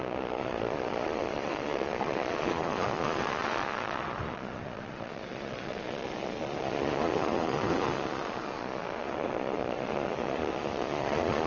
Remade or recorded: remade